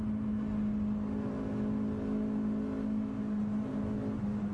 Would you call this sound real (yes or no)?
yes